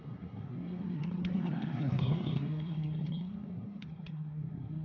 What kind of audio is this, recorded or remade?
remade